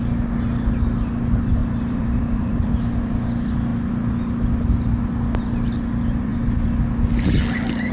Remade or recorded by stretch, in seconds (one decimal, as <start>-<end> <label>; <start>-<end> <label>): 0.0-1.6 recorded; 1.6-2.5 remade; 2.5-7.9 recorded